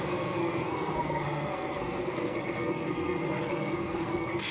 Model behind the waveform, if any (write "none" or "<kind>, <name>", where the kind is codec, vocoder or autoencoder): codec, SNAC